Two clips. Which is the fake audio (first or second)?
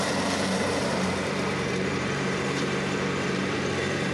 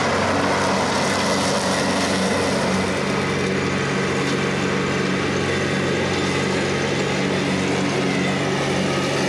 first